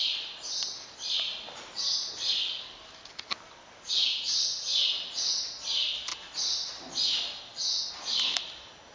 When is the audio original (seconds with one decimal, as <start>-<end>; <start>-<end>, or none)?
0.0-2.4; 3.9-8.9